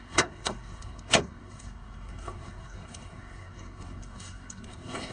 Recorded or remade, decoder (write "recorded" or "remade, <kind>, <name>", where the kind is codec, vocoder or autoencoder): remade, codec, SNAC